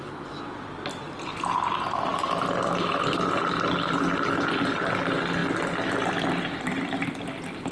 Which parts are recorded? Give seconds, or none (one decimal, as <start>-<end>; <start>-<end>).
0.0-7.7